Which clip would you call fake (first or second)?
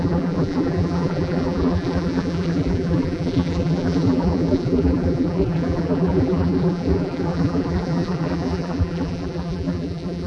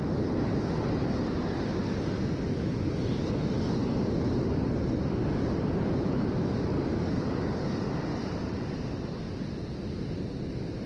first